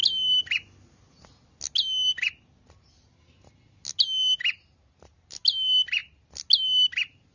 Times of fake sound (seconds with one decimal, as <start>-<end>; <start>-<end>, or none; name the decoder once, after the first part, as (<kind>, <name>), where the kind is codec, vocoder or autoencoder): none